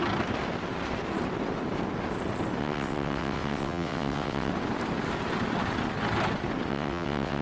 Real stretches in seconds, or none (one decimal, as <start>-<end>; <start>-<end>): 0.0-2.6; 4.5-6.7